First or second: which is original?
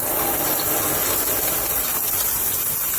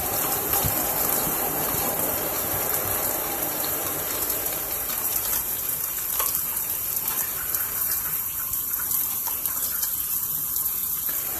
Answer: first